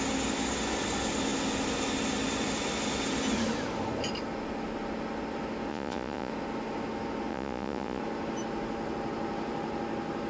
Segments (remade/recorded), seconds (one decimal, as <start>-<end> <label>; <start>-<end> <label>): 0.0-5.7 recorded; 5.7-6.3 remade; 6.3-7.3 recorded; 7.3-8.0 remade; 8.0-10.3 recorded